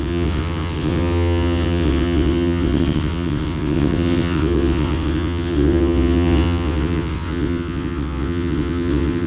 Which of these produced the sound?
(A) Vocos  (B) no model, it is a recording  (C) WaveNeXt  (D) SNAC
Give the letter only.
C